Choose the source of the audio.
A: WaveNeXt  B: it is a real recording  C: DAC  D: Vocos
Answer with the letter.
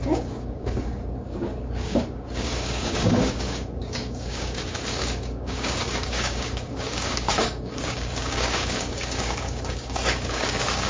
C